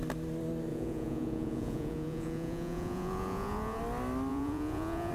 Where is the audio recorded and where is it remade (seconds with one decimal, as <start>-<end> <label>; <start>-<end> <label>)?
0.0-0.7 recorded; 0.7-3.8 remade; 3.8-4.3 recorded; 4.3-5.1 remade